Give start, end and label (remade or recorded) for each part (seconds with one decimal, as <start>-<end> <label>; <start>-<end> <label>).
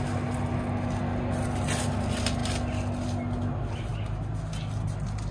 0.0-5.3 recorded